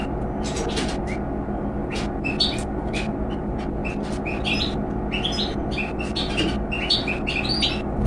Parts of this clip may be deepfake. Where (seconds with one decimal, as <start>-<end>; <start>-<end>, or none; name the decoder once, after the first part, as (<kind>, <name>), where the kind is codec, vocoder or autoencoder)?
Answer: none